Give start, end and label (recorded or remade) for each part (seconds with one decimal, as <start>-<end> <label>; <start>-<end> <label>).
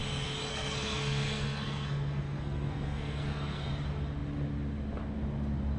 0.0-0.5 recorded; 0.5-3.7 remade; 3.7-5.8 recorded